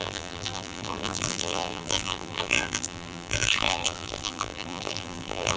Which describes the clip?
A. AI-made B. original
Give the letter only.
A